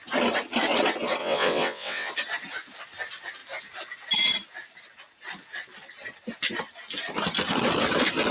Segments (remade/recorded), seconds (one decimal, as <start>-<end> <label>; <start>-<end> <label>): 0.0-1.2 recorded; 1.2-2.1 remade; 2.1-8.3 recorded